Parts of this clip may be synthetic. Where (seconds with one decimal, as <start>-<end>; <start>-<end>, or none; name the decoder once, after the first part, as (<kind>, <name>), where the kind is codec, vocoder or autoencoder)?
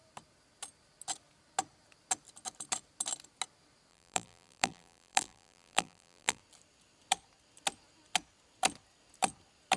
3.9-6.4 (vocoder, BigVGAN v2)